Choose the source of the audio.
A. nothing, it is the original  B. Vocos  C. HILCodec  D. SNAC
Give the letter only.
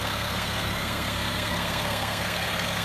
D